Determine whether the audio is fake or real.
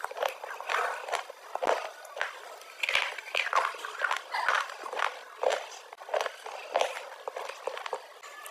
real